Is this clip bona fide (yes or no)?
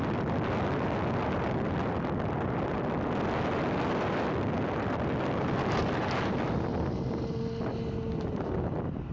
yes